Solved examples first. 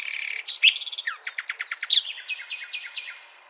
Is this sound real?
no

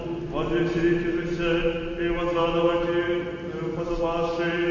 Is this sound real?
yes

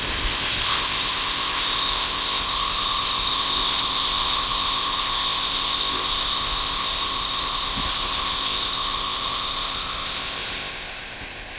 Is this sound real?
no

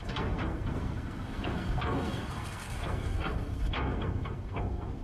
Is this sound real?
no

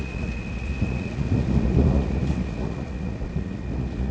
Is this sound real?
no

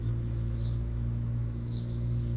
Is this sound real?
no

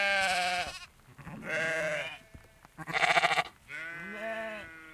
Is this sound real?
yes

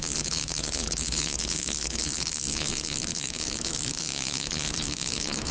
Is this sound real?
no